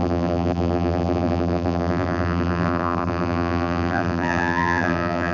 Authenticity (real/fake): fake